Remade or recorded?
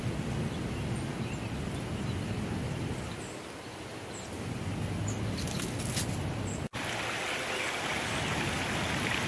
recorded